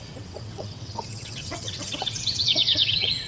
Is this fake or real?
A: fake